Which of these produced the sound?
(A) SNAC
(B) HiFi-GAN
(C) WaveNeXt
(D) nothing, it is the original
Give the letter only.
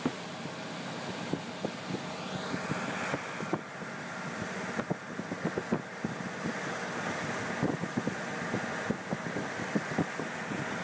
D